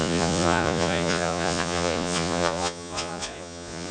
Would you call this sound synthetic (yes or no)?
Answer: yes